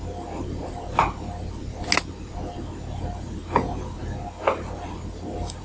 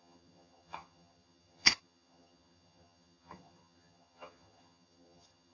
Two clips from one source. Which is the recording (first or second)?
first